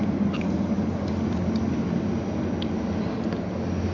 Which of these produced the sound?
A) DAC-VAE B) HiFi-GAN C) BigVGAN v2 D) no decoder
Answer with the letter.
D